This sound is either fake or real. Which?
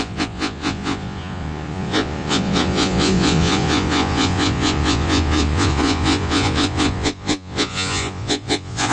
fake